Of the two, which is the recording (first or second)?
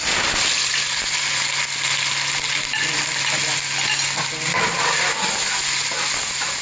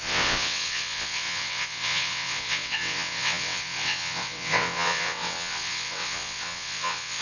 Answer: first